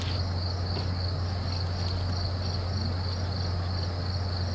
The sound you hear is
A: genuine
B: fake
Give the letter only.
A